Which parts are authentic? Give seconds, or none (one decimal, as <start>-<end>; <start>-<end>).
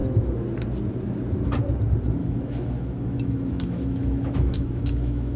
0.0-2.2